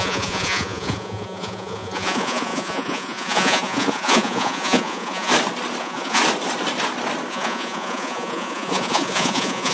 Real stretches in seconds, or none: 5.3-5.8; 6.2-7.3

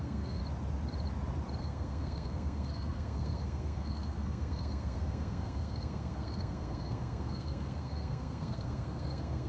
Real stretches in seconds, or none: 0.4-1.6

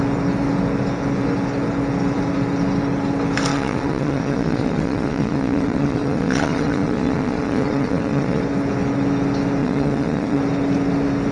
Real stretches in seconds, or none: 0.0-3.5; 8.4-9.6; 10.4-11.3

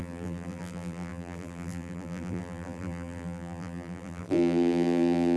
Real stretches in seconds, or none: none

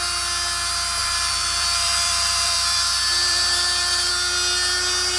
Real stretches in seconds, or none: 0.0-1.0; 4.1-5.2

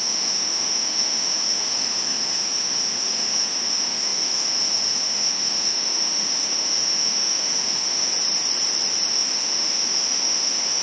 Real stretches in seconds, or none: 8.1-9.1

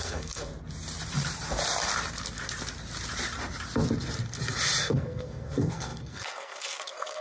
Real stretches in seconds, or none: 0.5-4.8